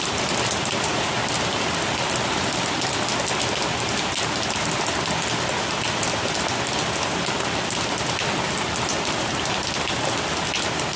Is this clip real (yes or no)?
yes